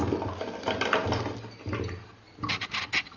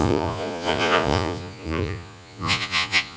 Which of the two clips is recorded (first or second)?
first